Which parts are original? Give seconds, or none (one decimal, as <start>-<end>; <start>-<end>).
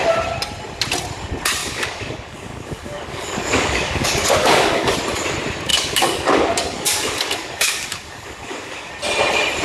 0.0-1.6; 4.9-5.7; 8.9-9.6